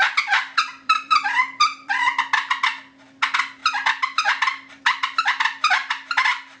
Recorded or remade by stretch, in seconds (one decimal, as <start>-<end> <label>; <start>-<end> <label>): 0.0-0.7 recorded; 0.7-2.6 remade; 2.6-3.6 recorded; 3.6-4.8 remade; 4.8-6.6 recorded